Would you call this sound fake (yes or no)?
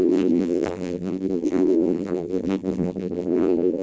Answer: yes